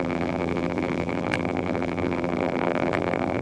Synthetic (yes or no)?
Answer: yes